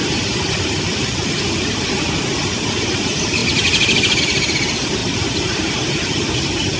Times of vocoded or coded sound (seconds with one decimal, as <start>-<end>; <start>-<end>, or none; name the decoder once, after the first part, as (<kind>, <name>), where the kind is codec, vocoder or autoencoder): 5.0-5.7 (vocoder, BigVGAN v2)